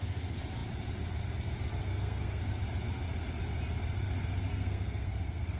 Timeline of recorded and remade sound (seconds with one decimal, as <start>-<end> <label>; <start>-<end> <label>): 0.0-1.8 recorded; 1.8-2.4 remade; 2.4-4.5 recorded; 4.5-5.6 remade